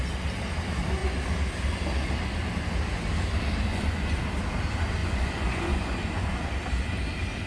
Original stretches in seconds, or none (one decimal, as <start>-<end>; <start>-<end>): 0.0-3.7; 4.2-5.0; 6.5-7.5